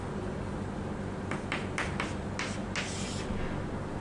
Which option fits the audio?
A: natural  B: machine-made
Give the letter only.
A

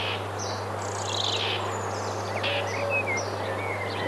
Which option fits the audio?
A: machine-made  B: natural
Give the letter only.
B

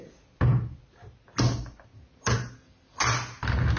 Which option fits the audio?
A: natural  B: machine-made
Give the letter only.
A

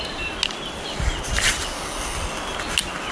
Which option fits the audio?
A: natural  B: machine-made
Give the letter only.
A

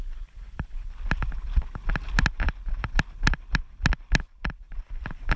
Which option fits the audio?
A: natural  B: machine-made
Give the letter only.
A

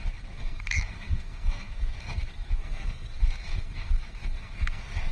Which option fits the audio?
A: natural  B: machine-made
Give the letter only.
B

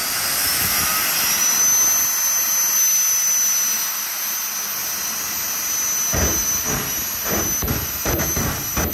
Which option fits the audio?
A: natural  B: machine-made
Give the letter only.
A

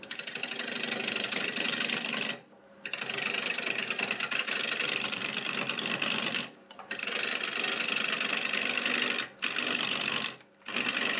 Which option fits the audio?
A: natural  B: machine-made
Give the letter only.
B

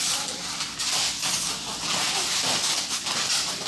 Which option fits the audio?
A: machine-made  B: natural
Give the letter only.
B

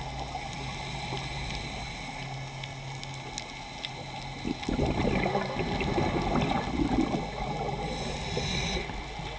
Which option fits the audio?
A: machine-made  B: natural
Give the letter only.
B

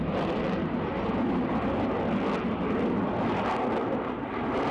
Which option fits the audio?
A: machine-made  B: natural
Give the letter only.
B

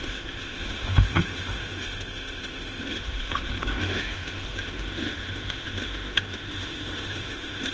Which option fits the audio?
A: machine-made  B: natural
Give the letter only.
A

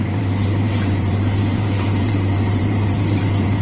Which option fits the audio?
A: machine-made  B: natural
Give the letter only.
A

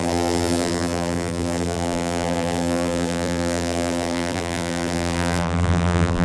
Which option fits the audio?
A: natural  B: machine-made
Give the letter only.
B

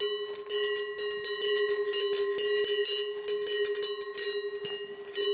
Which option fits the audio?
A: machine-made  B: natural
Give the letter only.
B